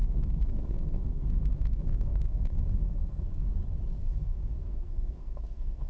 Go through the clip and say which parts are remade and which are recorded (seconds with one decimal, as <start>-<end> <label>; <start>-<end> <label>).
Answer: 0.0-3.5 remade; 3.5-4.0 recorded; 4.0-5.9 remade